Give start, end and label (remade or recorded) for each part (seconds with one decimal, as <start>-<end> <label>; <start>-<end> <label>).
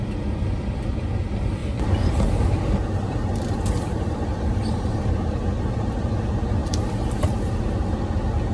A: 0.0-1.6 recorded; 1.6-5.0 remade; 5.0-8.5 recorded